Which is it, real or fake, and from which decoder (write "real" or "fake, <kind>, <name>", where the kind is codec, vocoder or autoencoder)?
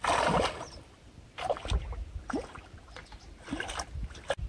real